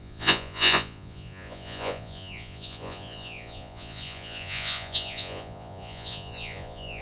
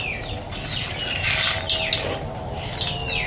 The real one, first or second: second